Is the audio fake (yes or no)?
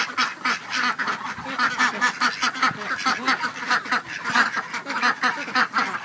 no